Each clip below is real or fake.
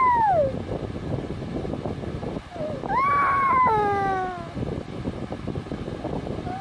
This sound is real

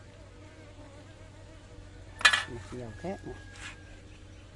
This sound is real